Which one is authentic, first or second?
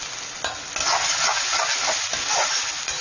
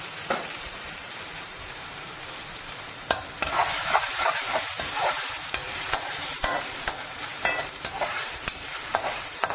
first